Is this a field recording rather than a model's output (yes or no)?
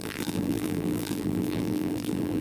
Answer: no